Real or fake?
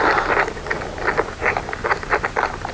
real